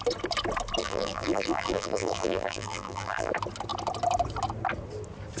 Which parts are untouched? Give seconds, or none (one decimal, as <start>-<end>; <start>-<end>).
0.0-0.8; 3.3-5.4